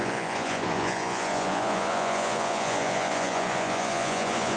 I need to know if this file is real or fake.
fake